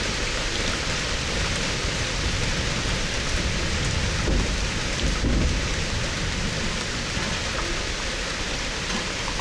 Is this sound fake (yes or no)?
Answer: no